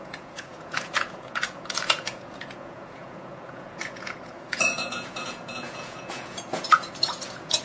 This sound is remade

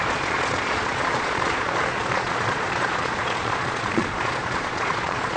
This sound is remade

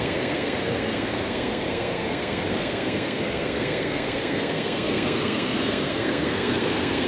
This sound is remade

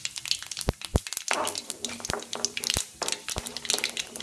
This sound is recorded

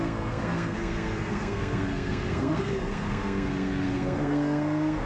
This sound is remade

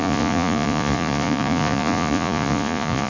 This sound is remade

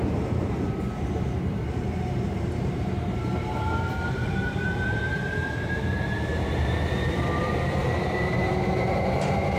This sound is remade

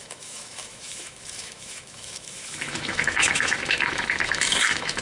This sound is remade